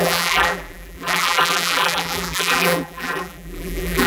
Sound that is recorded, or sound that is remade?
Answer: remade